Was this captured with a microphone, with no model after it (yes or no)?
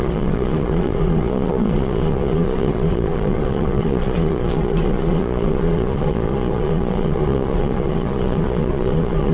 no